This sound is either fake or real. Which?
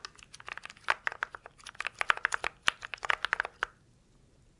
real